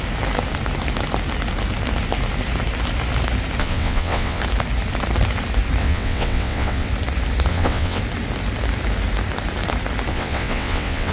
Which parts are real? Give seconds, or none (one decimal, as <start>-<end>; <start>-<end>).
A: 0.0-3.6; 4.4-5.8; 6.9-7.5; 8.0-10.1